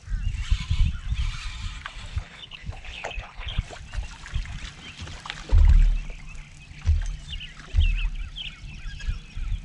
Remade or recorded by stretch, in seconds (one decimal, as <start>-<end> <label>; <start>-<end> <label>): 0.0-2.1 recorded; 2.1-3.6 remade; 3.6-9.6 recorded